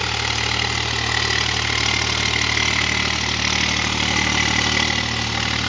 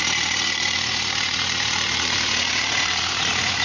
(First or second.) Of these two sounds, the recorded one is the first